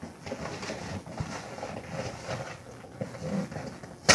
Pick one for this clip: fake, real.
real